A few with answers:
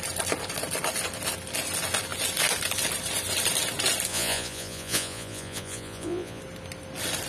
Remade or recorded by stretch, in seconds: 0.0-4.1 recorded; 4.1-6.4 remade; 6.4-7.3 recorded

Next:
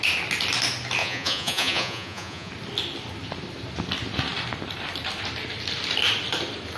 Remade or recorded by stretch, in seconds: 0.0-1.0 recorded; 1.0-2.5 remade; 2.5-6.8 recorded

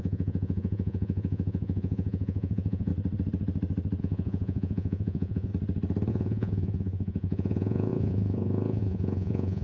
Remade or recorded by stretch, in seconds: 0.0-2.9 remade; 2.9-4.0 recorded; 4.0-5.5 remade; 5.5-6.1 recorded; 6.1-9.6 remade

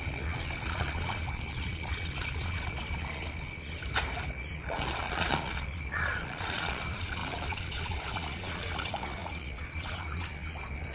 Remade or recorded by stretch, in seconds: 0.0-3.8 remade; 3.8-4.3 recorded; 4.3-10.9 remade

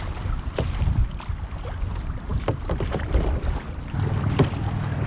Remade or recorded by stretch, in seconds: 0.0-5.1 recorded

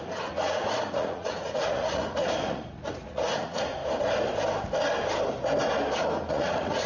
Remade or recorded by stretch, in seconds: 0.0-3.8 remade; 3.8-6.3 recorded; 6.3-6.9 remade

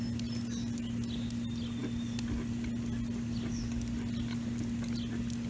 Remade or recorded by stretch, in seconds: 0.0-5.5 recorded